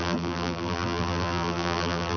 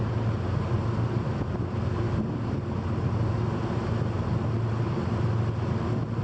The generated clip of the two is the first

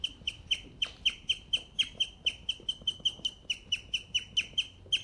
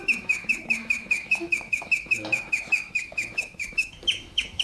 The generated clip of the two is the second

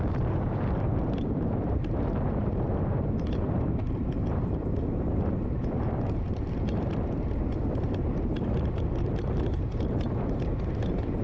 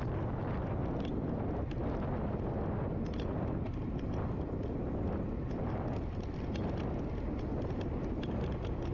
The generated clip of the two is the first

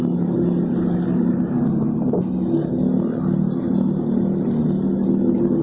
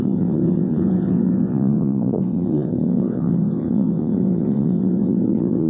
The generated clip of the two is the second